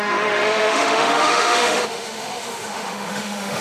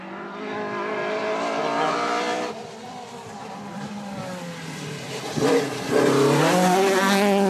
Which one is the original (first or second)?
second